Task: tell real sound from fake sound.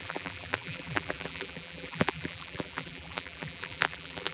fake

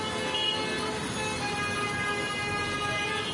real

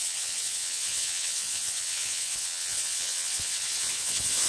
fake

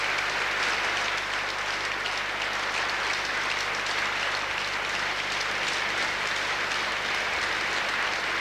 real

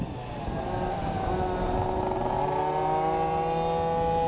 real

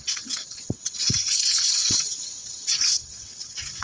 fake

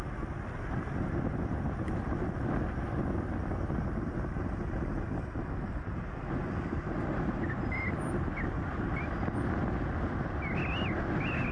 real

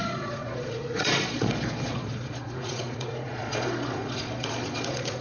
fake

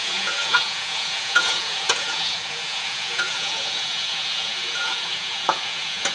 fake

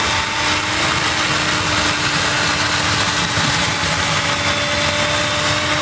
real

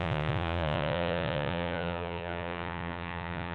fake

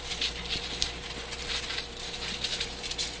real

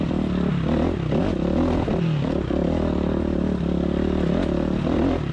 real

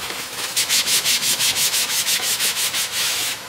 fake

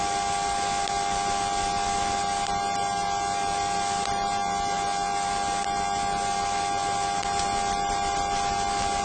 real